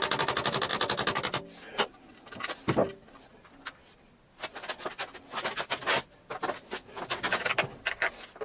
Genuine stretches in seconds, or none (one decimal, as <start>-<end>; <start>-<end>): 0.0-8.4